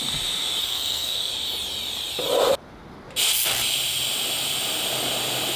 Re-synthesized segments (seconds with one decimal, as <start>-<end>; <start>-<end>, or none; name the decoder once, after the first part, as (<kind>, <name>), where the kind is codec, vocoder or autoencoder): 0.6-1.3 (codec, SNAC)